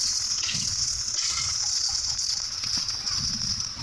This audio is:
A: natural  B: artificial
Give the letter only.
B